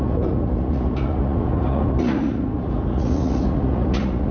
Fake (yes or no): yes